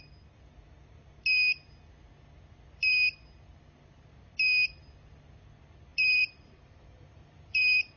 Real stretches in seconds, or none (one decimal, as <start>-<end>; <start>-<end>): 0.0-5.9